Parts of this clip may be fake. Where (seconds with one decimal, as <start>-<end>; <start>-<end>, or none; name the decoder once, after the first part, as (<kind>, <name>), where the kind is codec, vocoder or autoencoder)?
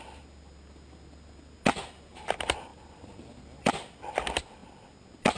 2.7-3.7 (vocoder, BigVGAN v2)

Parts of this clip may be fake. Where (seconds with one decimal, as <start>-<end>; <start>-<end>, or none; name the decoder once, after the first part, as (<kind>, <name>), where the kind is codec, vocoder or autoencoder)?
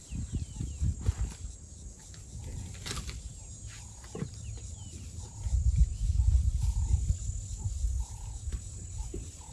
none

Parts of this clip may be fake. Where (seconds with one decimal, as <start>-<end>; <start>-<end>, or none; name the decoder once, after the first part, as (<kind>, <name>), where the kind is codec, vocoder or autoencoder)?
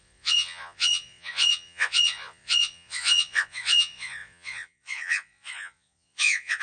0.0-6.6 (vocoder, Vocos)